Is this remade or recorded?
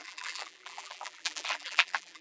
remade